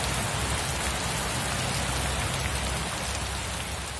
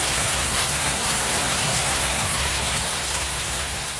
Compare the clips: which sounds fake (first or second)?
second